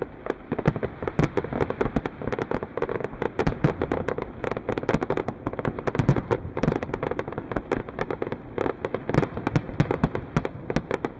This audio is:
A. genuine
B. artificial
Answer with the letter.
A